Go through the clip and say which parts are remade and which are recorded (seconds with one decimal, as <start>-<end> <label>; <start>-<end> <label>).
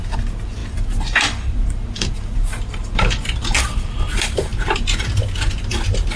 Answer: 0.0-6.2 remade